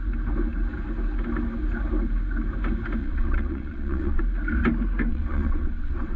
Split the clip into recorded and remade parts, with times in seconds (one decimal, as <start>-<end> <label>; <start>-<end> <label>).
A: 0.0-3.0 recorded; 3.0-4.2 remade; 4.2-5.1 recorded; 5.1-6.2 remade